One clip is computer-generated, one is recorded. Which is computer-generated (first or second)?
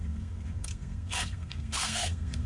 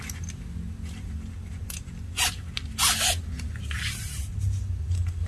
first